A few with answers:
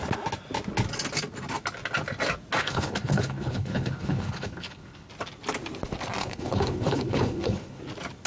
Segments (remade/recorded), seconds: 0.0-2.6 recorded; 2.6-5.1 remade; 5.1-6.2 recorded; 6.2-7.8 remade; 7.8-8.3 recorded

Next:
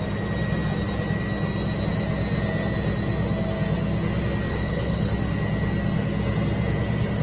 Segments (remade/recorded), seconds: 0.0-4.5 recorded; 4.5-5.1 remade; 5.1-7.2 recorded